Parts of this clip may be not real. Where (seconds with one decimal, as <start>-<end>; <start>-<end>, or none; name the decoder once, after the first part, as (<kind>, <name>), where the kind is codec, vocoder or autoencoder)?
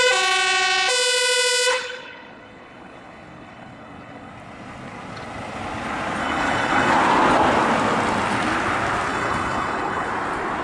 1.7-4.3 (codec, HILCodec); 6.2-6.9; 9.1-10.1